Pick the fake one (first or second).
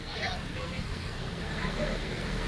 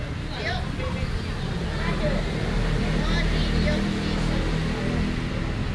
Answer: first